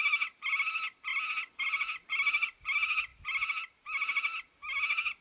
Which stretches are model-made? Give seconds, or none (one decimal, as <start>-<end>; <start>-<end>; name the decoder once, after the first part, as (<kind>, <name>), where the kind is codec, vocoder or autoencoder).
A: none